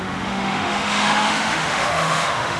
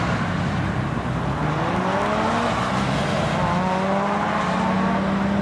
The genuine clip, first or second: second